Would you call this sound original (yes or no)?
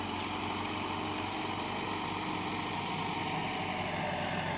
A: yes